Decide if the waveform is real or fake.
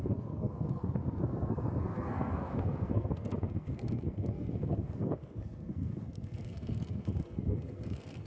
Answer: fake